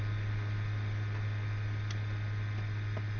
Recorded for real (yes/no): yes